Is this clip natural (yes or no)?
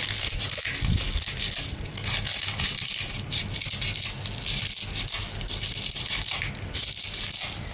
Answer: yes